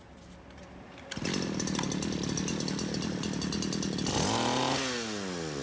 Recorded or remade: recorded